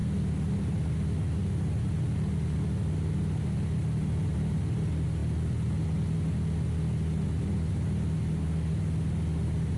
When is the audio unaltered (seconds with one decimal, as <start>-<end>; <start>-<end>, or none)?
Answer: 0.0-9.8